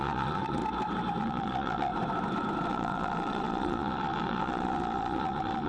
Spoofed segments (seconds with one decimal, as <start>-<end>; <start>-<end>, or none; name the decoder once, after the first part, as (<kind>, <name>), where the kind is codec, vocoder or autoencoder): 0.0-0.6 (vocoder, Vocos); 1.2-1.9; 2.7-5.7